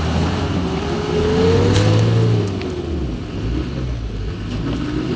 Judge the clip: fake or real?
real